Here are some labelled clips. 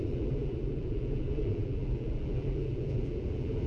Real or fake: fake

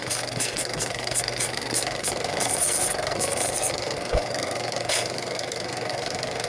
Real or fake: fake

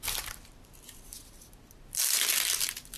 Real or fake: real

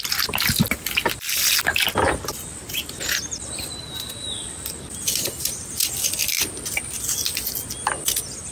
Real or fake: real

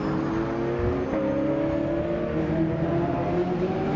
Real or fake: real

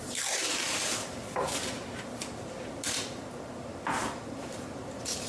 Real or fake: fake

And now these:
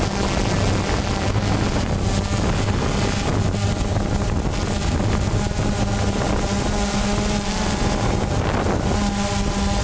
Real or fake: real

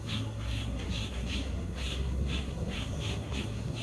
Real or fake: fake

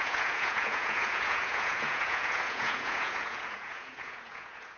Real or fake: fake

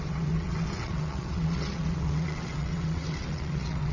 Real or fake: fake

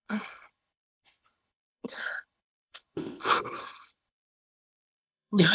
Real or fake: fake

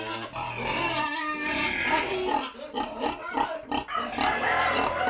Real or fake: real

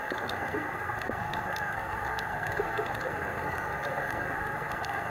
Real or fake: fake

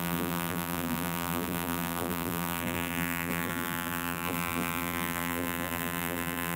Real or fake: fake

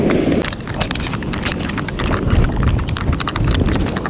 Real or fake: real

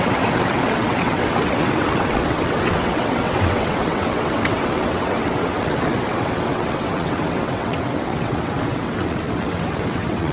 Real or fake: fake